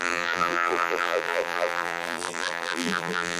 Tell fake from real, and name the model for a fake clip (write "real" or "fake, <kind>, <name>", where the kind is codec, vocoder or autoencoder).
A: fake, vocoder, BigVGAN v2